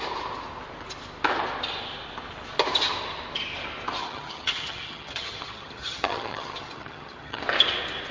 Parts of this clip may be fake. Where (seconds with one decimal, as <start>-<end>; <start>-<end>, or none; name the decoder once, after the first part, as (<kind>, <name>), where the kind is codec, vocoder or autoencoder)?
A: 4.0-7.4 (vocoder, HiFi-GAN)